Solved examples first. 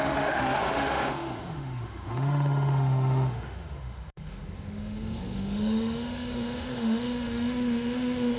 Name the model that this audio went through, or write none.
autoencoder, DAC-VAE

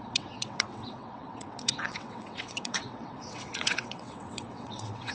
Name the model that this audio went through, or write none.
vocoder, WaveNeXt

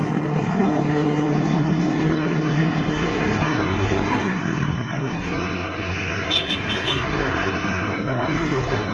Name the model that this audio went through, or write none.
codec, SNAC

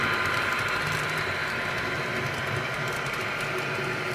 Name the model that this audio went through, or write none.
none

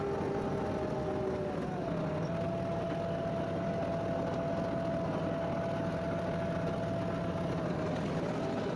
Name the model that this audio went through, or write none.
none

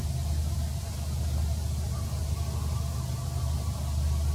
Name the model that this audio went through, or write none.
none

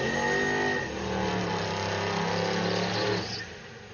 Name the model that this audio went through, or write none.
none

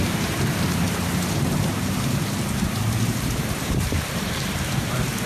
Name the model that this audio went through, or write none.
vocoder, BigVGAN v2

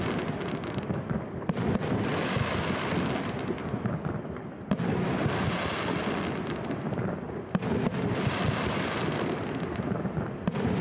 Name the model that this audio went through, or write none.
vocoder, BigVGAN v2